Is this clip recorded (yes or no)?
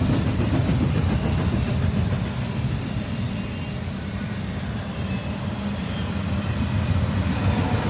yes